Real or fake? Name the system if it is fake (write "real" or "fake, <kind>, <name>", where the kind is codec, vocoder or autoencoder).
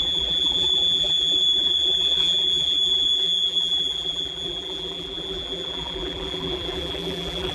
fake, vocoder, BigVGAN v2